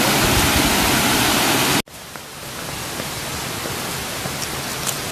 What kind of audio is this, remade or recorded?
recorded